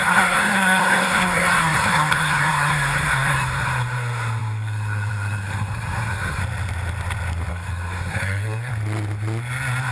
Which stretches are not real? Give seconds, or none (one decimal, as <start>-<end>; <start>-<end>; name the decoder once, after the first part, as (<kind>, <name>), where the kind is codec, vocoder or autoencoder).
0.0-6.4 (codec, SNAC); 7.5-8.7